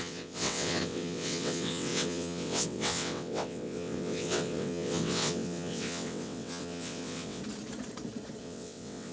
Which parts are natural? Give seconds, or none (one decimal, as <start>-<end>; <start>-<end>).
7.4-8.4